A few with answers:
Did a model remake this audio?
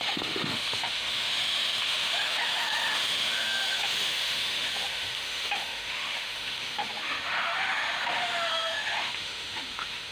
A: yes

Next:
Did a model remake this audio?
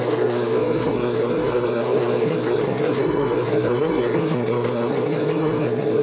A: yes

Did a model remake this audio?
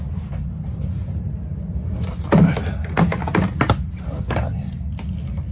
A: no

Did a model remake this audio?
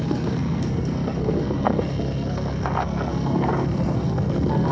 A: yes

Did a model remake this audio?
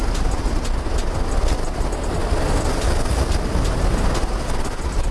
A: no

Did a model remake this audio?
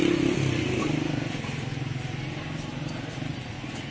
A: no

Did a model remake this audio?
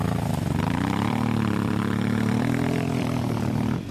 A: yes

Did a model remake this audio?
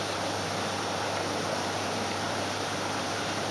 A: yes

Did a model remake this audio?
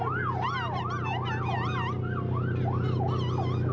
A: no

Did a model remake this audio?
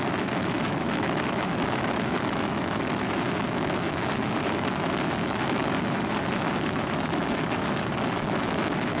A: yes